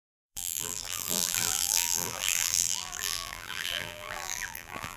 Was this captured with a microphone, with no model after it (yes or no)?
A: no